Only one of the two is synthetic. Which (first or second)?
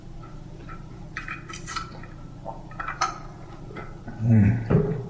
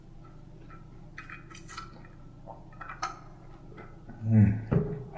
first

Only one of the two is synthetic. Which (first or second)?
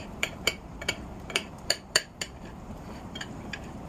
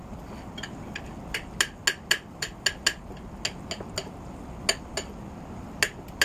first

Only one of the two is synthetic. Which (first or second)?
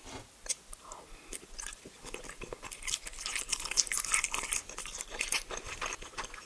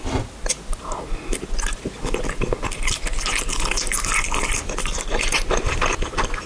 first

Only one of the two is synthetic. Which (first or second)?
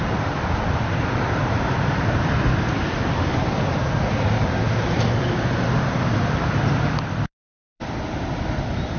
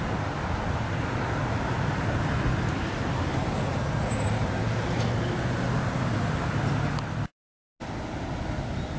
first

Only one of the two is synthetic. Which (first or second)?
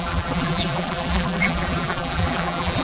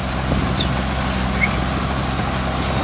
first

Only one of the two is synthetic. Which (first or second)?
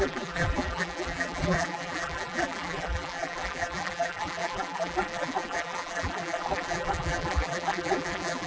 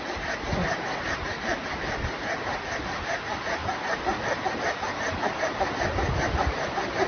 first